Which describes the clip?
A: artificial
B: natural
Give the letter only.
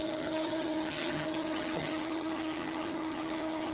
A